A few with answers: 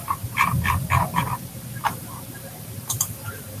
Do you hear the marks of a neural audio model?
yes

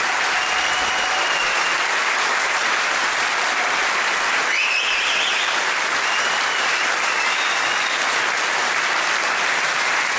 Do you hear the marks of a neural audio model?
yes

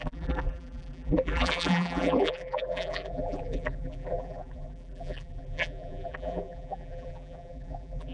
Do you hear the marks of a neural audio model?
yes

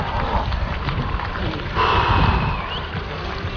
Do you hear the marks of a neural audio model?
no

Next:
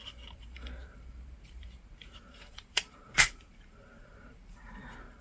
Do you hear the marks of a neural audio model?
yes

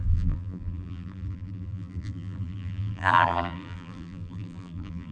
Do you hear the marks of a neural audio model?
yes